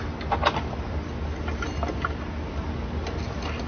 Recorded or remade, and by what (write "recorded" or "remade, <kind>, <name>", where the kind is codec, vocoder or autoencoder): recorded